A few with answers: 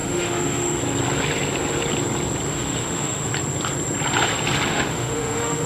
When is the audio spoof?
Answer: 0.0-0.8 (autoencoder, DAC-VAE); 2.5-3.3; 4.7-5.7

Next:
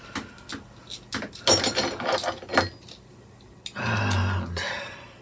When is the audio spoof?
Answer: none

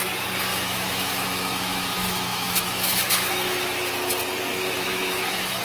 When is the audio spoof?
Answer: 0.5-3.9 (autoencoder, DAC-VAE); 4.5-5.6

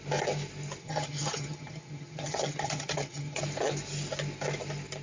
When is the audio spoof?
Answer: 0.8-3.4 (vocoder, HiFi-GAN)